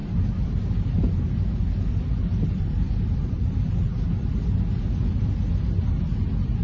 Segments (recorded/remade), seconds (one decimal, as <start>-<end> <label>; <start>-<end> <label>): 0.0-2.1 recorded; 2.1-4.4 remade; 4.4-6.6 recorded